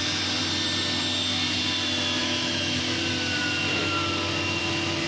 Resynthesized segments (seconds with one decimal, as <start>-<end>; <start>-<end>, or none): 2.2-2.8